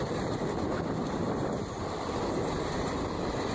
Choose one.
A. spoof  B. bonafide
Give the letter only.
B